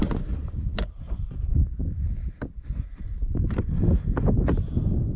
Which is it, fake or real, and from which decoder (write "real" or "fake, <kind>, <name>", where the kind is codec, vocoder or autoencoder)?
real